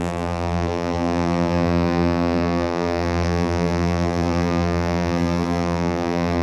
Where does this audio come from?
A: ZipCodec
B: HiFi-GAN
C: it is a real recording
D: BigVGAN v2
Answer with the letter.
D